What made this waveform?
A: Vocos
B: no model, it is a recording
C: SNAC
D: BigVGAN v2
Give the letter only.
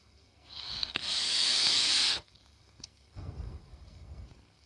C